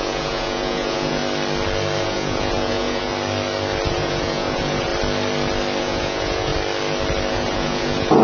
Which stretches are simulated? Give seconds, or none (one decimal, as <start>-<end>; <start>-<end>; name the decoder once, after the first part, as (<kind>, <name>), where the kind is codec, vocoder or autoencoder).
0.0-1.2 (vocoder, Vocos); 2.0-3.1; 3.9-4.9; 5.8-6.5; 7.3-8.2